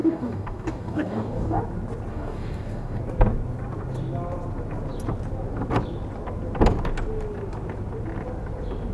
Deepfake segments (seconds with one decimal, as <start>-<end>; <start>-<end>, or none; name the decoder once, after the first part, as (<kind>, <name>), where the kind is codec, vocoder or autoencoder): 0.0-1.6 (codec, DAC); 2.1-3.0